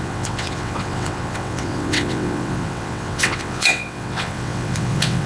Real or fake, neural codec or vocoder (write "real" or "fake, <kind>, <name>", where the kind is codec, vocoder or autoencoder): fake, vocoder, WaveNeXt